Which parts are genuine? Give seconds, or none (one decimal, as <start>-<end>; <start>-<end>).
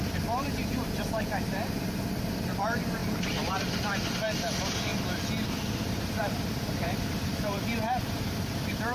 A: 4.9-5.5